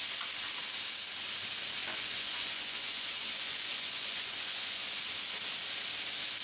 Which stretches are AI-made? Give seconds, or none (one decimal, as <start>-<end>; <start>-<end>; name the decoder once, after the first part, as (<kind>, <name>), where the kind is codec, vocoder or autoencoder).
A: 1.8-5.0 (vocoder, Vocos)